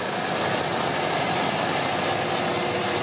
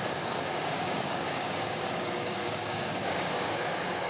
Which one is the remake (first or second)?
second